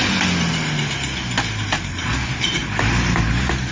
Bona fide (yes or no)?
yes